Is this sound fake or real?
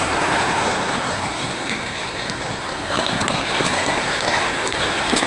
fake